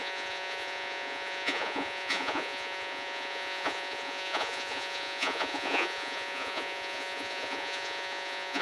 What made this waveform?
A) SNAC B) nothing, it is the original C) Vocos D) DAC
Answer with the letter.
C